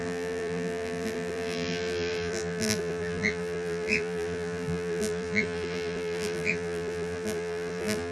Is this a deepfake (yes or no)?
yes